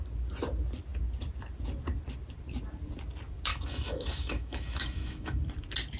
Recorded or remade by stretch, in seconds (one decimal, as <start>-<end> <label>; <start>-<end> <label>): 0.0-3.5 recorded; 3.5-5.4 remade; 5.4-6.0 recorded